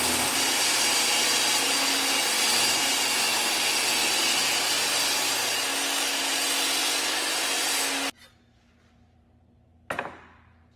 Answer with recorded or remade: recorded